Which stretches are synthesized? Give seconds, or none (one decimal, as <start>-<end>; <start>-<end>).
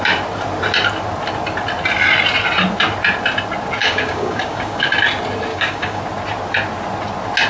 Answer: 3.8-4.9; 5.5-6.0